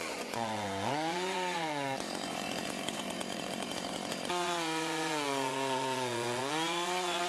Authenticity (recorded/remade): remade